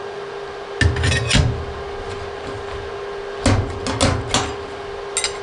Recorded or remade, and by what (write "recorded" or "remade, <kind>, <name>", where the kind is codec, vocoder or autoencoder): recorded